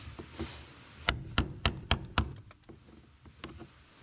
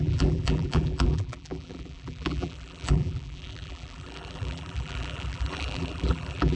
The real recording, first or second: first